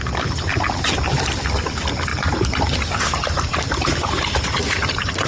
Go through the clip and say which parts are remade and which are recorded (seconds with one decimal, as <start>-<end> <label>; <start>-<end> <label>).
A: 0.0-2.1 recorded; 2.1-5.3 remade

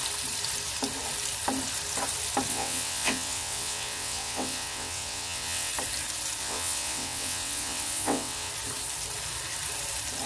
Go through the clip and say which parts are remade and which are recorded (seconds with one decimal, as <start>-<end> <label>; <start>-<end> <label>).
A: 0.0-2.5 recorded; 2.5-5.7 remade; 5.7-6.4 recorded; 6.4-8.5 remade; 8.5-10.3 recorded

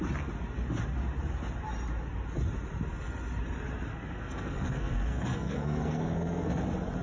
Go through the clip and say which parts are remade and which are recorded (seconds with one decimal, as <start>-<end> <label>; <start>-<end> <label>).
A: 0.0-3.9 recorded; 3.9-6.6 remade; 6.6-7.0 recorded

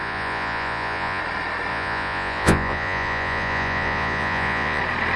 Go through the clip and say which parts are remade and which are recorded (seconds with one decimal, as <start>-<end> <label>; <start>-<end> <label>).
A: 0.0-1.2 remade; 1.2-1.7 recorded; 1.7-4.8 remade; 4.8-5.2 recorded

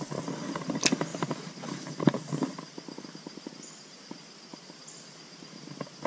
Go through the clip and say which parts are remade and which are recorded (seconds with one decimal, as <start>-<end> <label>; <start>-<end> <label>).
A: 0.0-1.1 recorded; 1.1-2.2 remade; 2.2-6.1 recorded

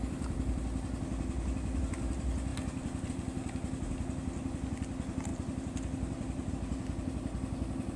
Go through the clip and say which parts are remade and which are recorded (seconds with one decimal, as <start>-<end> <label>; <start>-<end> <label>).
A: 0.0-5.3 recorded; 5.3-6.5 remade; 6.5-8.0 recorded

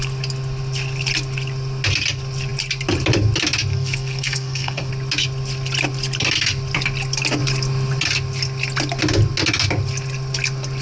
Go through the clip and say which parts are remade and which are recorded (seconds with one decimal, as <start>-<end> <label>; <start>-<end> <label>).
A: 0.0-3.7 recorded; 3.7-4.9 remade; 4.9-10.8 recorded

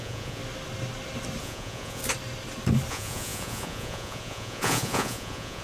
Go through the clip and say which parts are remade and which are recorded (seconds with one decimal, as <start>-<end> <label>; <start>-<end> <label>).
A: 0.0-0.4 remade; 0.4-1.4 recorded; 1.4-2.0 remade; 2.0-2.9 recorded; 2.9-5.6 remade